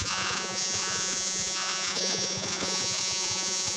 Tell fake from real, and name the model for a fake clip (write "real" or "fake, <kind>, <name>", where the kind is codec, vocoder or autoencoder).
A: fake, vocoder, Vocos